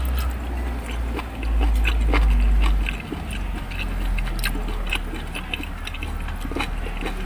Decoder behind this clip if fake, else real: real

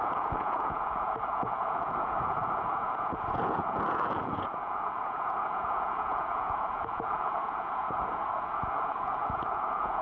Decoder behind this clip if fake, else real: fake, vocoder, Vocos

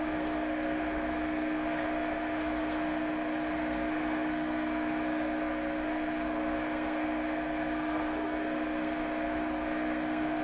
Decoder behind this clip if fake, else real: fake, codec, SNAC